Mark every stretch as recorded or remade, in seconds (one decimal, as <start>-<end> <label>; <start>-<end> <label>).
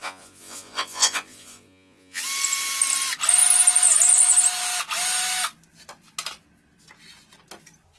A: 0.0-2.2 remade; 2.2-8.0 recorded